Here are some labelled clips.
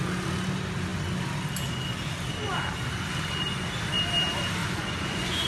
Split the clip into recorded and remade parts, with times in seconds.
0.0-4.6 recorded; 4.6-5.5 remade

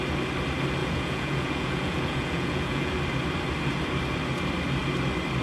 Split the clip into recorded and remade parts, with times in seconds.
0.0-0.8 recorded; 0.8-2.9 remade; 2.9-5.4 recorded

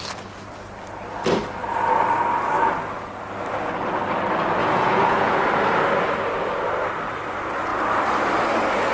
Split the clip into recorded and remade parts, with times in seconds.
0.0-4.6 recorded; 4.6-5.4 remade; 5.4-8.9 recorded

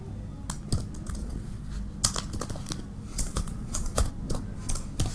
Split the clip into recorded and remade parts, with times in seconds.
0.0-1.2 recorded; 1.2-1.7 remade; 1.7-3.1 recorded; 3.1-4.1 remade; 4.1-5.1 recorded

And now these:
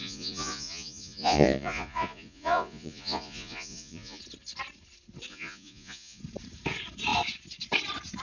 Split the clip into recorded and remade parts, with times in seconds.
0.0-4.2 remade; 4.2-5.3 recorded; 5.3-6.2 remade; 6.2-8.2 recorded

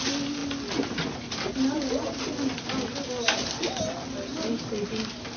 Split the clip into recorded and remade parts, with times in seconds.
0.0-5.4 recorded